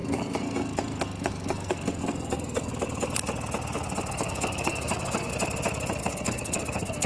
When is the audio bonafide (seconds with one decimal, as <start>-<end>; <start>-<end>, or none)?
2.7-4.1; 5.3-6.0